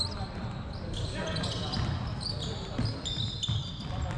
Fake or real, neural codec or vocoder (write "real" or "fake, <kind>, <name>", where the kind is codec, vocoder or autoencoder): real